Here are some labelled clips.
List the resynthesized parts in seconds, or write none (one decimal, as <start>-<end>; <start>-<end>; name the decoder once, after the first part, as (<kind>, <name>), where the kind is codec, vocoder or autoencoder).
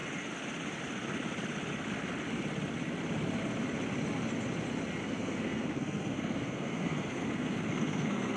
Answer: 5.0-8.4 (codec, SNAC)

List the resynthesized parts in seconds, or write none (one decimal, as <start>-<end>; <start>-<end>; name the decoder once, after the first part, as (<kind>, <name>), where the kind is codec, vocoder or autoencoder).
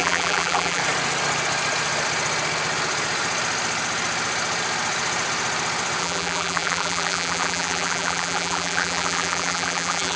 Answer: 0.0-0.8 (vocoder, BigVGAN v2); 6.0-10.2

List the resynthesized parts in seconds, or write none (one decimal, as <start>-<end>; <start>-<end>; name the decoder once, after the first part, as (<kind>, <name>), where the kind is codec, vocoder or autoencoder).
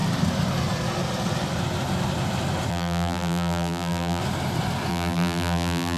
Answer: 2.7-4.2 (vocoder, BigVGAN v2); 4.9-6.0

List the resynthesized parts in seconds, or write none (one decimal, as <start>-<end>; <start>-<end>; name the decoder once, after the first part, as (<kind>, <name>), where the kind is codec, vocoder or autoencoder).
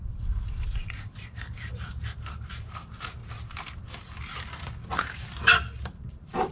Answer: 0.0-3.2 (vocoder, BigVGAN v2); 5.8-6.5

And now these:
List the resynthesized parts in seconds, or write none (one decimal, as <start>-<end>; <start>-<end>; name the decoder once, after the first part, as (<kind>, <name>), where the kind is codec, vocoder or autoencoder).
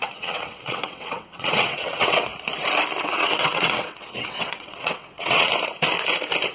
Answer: 0.0-2.3 (vocoder, WaveNeXt); 3.0-5.5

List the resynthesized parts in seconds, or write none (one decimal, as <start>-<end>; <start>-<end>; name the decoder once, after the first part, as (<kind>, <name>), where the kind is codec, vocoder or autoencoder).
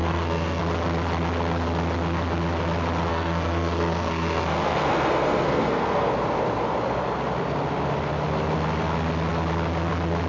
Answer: 0.0-0.6 (codec, SNAC); 3.1-6.1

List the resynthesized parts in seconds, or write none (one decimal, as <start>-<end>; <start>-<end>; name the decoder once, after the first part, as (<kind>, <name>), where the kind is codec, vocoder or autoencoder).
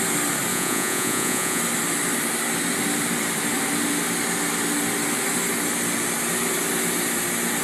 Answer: 0.5-1.6 (vocoder, Vocos)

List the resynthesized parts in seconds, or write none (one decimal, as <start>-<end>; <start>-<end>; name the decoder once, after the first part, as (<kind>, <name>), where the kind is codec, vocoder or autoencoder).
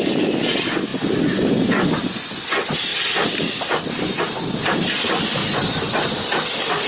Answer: 2.9-4.2 (vocoder, BigVGAN v2); 5.4-6.3